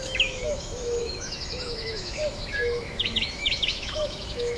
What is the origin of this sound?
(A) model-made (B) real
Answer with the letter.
A